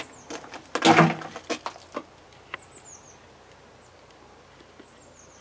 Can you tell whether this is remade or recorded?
recorded